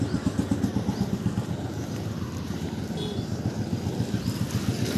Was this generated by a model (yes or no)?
no